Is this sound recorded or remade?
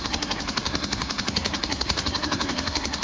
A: remade